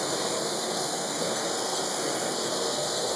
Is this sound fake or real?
fake